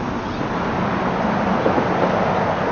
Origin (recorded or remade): recorded